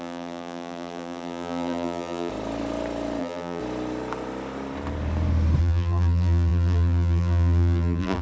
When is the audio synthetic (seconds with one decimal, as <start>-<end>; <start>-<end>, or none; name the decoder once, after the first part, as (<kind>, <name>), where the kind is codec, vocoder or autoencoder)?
0.0-2.3 (vocoder, BigVGAN v2); 3.2-3.6; 5.6-8.2